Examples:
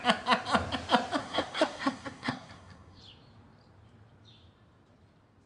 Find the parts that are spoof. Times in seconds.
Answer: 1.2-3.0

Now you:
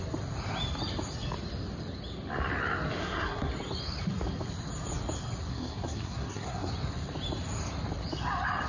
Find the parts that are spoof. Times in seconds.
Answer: 3.0-3.5; 5.5-6.7

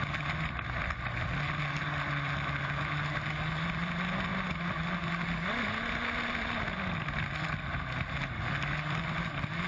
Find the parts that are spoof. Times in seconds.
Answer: none

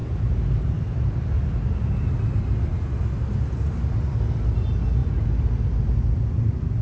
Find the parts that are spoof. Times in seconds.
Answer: none